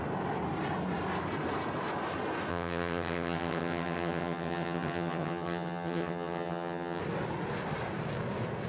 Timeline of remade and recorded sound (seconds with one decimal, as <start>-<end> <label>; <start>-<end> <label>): 0.0-2.5 recorded; 2.5-7.0 remade; 7.0-8.7 recorded

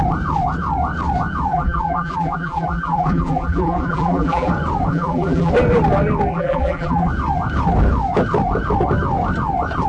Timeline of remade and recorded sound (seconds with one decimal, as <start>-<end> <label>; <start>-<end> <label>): 0.0-1.5 recorded; 1.5-4.5 remade; 4.5-4.9 recorded; 4.9-5.5 remade; 5.5-6.3 recorded; 6.3-7.1 remade; 7.1-9.9 recorded